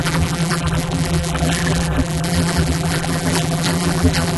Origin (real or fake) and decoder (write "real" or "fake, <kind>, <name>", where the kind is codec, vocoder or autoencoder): fake, vocoder, BigVGAN v2